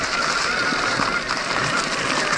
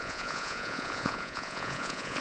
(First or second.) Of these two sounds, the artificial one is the second